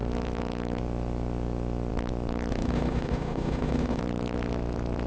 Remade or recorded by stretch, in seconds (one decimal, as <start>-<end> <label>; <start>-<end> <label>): 0.0-2.5 recorded; 2.5-4.0 remade; 4.0-5.1 recorded